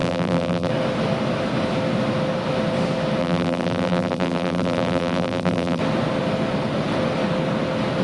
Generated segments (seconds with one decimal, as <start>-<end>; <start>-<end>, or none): 0.0-0.7; 3.2-5.8